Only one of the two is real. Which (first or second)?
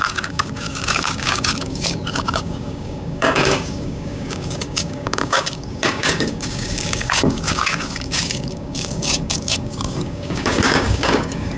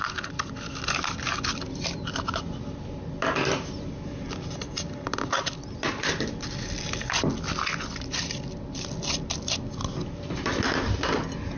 second